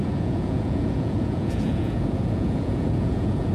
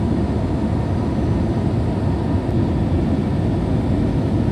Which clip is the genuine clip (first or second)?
second